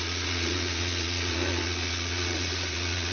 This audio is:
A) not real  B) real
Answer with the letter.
A